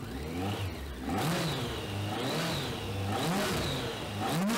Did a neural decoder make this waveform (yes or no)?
no